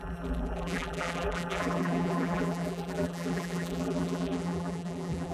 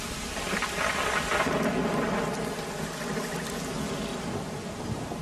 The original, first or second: second